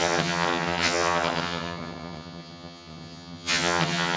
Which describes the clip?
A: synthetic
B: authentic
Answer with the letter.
A